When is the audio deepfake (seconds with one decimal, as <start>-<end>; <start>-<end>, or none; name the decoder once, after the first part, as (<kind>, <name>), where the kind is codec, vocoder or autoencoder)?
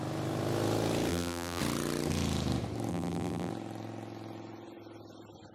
1.1-1.6 (vocoder, BigVGAN v2); 2.9-3.5